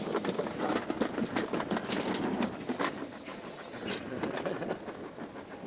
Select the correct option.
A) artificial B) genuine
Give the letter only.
B